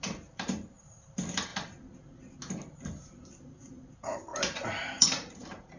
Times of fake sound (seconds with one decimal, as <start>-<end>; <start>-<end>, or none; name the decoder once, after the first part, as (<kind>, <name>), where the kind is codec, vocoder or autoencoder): 0.0-1.5 (vocoder, BigVGAN v2); 3.6-5.8